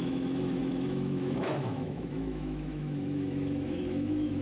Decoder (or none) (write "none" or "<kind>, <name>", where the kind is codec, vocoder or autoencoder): autoencoder, DAC-VAE